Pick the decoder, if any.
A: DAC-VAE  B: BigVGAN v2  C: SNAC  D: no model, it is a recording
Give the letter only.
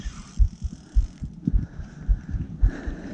D